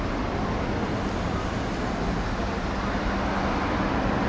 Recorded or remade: recorded